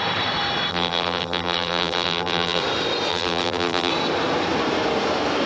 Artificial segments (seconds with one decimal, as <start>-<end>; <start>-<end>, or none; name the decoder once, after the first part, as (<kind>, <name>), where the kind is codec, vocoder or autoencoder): 0.7-2.6 (vocoder, BigVGAN v2); 3.1-3.9